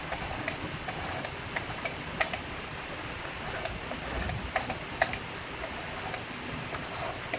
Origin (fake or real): real